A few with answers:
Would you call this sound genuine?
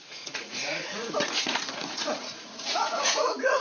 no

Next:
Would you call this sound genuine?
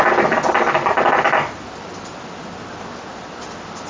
yes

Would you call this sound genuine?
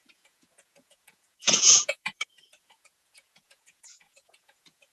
no